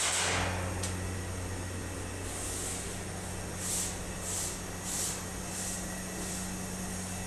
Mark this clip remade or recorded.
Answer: recorded